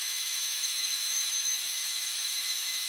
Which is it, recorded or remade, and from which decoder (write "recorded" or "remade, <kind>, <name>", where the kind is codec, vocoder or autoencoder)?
remade, autoencoder, DAC-VAE